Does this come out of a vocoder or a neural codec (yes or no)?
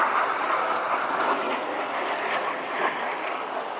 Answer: no